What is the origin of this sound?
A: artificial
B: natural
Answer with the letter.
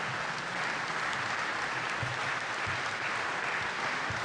B